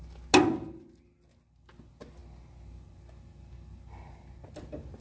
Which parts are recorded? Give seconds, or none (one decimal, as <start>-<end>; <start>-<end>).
0.0-5.0